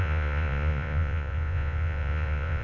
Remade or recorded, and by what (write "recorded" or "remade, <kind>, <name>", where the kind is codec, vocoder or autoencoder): remade, vocoder, Vocos